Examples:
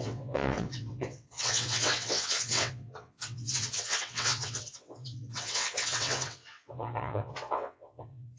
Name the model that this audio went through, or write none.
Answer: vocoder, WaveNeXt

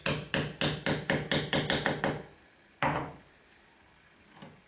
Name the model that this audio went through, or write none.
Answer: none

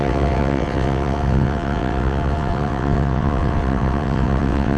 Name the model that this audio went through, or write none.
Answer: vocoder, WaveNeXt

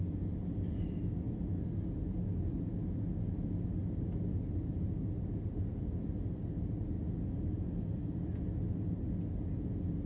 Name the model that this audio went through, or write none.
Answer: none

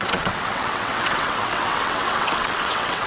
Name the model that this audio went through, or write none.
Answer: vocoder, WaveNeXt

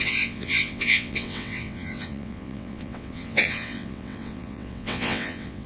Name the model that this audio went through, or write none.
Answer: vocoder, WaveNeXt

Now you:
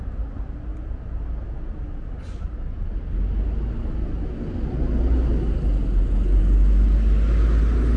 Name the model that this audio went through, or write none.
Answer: none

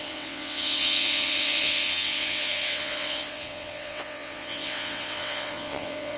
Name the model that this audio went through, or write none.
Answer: vocoder, WaveNeXt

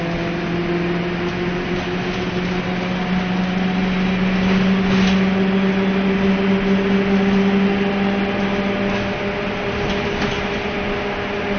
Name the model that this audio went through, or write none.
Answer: none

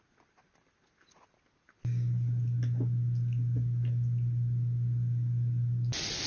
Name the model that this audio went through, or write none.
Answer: none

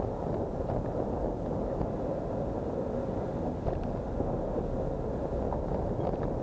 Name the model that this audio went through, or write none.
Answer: none